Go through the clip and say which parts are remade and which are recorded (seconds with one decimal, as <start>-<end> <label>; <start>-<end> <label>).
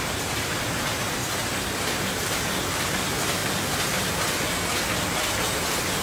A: 0.0-1.2 remade; 1.2-2.1 recorded; 2.1-3.4 remade; 3.4-6.0 recorded